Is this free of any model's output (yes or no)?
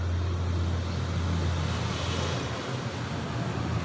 yes